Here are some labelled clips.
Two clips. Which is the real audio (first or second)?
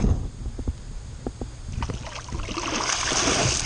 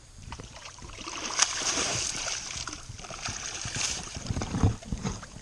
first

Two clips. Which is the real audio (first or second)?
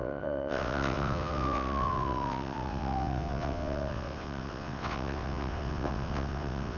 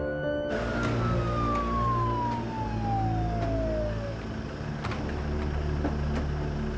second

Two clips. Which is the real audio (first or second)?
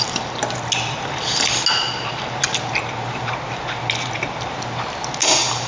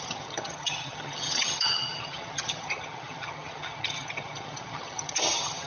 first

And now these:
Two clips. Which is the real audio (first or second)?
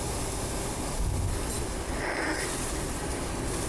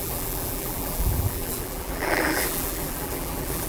first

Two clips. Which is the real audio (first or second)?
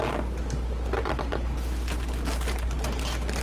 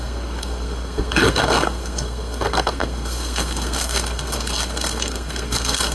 first